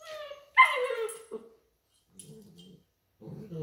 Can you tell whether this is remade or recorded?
recorded